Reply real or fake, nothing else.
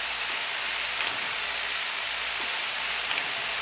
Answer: real